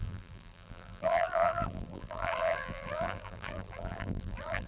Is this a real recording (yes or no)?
no